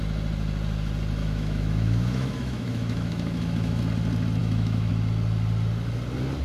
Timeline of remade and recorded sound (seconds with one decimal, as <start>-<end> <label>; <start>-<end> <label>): 0.0-1.2 recorded; 1.2-3.8 remade; 3.8-4.4 recorded; 4.4-4.9 remade; 4.9-6.4 recorded